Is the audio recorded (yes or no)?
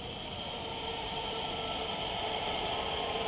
yes